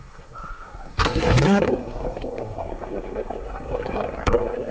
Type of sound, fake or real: fake